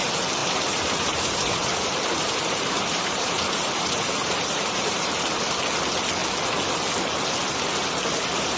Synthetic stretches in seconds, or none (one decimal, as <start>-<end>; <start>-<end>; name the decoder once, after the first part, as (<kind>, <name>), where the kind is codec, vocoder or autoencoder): 0.4-5.3 (vocoder, BigVGAN v2)